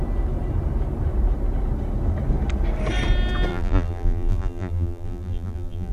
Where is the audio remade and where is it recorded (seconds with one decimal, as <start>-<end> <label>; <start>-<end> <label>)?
0.0-3.5 recorded; 3.5-5.9 remade